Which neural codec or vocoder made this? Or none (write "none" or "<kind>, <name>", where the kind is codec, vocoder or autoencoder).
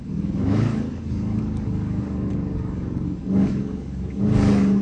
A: codec, DAC